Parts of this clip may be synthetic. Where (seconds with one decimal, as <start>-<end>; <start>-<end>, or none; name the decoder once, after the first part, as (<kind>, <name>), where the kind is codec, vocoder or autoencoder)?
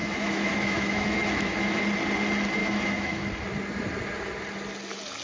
0.0-1.8 (autoencoder, DAC-VAE); 2.6-3.2